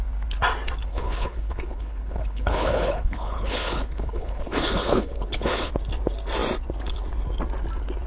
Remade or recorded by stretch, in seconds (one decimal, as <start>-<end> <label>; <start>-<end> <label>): 0.0-0.9 recorded; 0.9-5.7 remade; 5.7-8.1 recorded